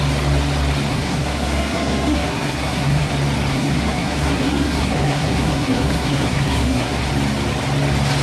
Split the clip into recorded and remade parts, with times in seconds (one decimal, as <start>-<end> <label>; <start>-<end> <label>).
0.0-0.9 recorded; 0.9-3.1 remade; 3.1-3.5 recorded; 3.5-7.1 remade; 7.1-8.2 recorded